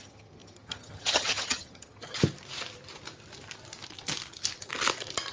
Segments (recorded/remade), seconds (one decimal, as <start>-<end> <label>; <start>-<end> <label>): 0.0-2.0 remade; 2.0-5.3 recorded